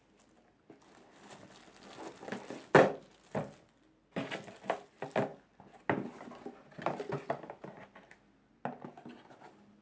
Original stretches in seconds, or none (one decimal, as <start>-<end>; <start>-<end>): 0.0-9.8